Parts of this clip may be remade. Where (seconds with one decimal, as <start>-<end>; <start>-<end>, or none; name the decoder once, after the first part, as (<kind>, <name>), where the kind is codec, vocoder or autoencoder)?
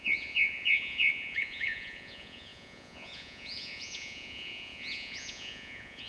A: 0.0-6.1 (vocoder, Vocos)